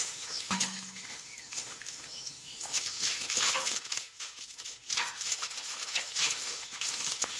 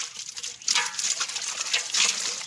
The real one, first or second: second